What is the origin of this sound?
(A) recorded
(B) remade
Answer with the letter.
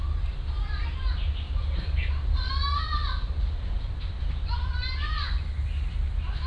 A